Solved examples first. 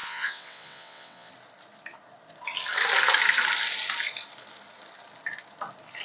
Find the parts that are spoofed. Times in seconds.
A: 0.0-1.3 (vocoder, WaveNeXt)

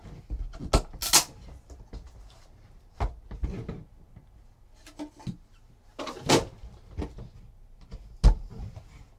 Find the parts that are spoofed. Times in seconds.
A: none

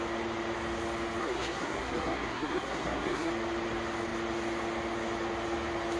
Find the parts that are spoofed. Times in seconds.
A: 1.2-3.3 (codec, SNAC)

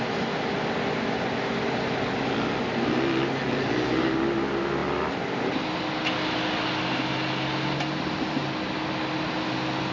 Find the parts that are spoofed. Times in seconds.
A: none